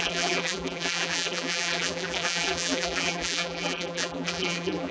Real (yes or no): no